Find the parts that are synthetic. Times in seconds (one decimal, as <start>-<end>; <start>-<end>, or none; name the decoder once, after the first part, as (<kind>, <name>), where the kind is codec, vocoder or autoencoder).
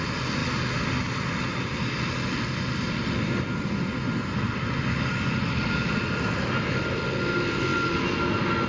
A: none